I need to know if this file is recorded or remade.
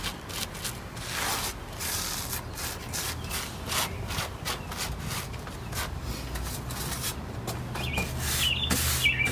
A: recorded